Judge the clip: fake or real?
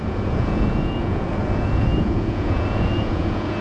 fake